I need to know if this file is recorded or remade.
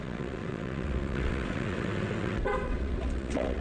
remade